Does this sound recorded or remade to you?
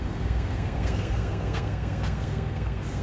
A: remade